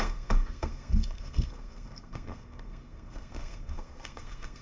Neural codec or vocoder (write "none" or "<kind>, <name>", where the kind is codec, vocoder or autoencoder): codec, SNAC